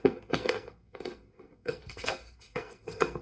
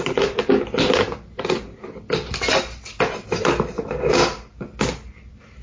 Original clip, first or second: second